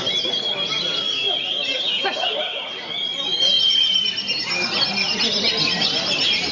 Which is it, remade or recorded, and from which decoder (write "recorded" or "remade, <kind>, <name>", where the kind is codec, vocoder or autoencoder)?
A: recorded